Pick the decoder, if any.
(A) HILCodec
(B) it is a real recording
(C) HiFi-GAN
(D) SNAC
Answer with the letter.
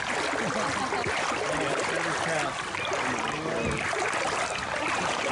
B